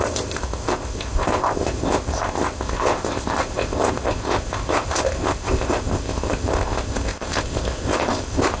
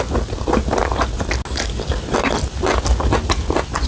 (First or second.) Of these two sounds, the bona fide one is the second